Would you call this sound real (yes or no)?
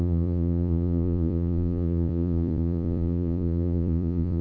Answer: no